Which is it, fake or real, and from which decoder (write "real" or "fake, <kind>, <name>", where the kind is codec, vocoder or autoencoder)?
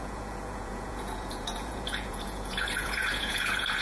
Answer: fake, vocoder, Vocos